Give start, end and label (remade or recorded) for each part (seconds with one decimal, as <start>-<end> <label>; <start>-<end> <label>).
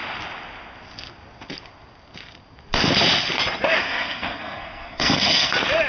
0.0-3.8 recorded; 3.8-5.5 remade; 5.5-5.9 recorded